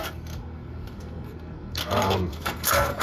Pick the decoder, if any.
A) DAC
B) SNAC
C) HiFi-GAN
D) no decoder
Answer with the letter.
B